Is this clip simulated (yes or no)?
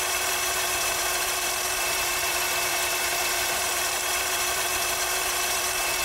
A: yes